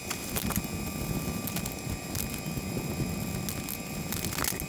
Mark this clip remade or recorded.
recorded